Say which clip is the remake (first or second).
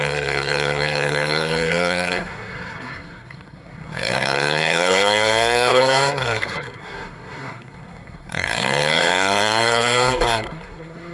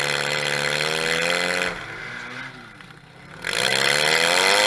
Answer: first